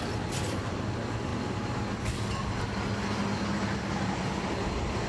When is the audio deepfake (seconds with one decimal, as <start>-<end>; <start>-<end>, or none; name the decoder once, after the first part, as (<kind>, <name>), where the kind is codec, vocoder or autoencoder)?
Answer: none